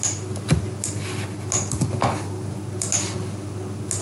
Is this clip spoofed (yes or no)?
no